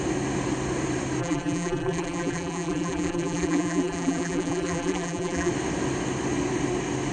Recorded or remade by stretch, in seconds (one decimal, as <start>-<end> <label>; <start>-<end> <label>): 0.0-1.2 recorded; 1.2-5.5 remade; 5.5-7.1 recorded

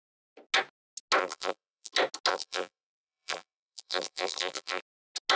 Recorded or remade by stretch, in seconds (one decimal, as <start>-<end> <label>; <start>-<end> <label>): 0.0-1.2 recorded; 1.2-1.9 remade; 1.9-2.3 recorded; 2.3-4.8 remade; 4.8-5.4 recorded

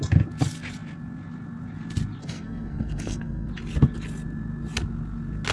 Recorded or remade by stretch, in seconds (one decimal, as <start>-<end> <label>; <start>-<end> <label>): 0.0-2.2 recorded; 2.2-3.5 remade; 3.5-5.5 recorded

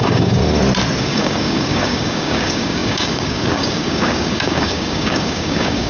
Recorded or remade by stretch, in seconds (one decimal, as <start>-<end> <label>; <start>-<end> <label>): 0.0-0.4 remade; 0.4-1.0 recorded; 1.0-5.9 remade

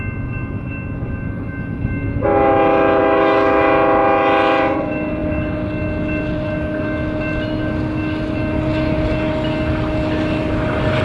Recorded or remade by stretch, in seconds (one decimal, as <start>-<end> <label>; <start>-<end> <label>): 0.0-3.0 recorded; 3.0-3.6 remade; 3.6-11.0 recorded

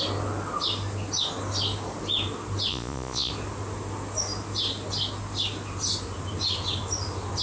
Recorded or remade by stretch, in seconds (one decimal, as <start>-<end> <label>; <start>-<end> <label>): 0.0-2.7 recorded; 2.7-3.3 remade; 3.3-7.4 recorded

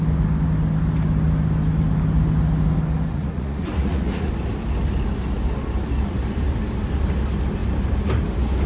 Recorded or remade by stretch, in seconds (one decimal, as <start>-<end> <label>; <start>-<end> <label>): 0.0-3.1 recorded; 3.1-4.3 remade; 4.3-8.7 recorded

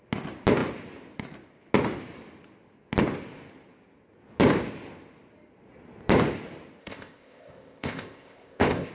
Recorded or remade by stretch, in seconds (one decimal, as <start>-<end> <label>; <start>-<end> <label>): 0.0-6.8 recorded; 6.8-8.9 remade